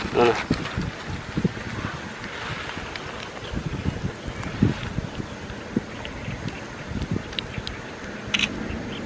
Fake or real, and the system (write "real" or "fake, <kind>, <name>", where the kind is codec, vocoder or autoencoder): real